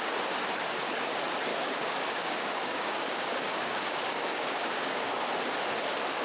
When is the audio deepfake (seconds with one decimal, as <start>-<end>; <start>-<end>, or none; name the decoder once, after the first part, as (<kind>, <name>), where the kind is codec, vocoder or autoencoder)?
1.5-5.2 (codec, DAC)